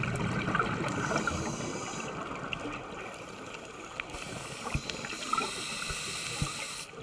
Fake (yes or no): no